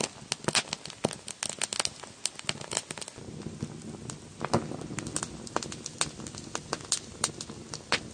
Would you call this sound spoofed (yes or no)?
no